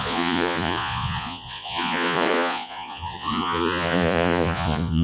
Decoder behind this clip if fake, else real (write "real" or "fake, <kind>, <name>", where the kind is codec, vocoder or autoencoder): fake, vocoder, Vocos